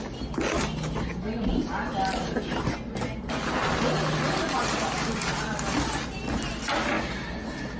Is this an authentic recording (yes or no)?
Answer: yes